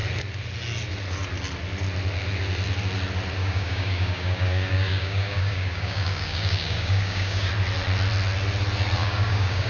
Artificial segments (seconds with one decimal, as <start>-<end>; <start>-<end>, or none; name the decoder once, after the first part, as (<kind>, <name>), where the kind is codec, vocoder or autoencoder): 3.4-7.5 (codec, DAC); 9.0-9.7